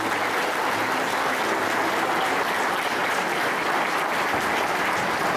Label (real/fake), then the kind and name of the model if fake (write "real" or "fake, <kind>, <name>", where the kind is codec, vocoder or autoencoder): real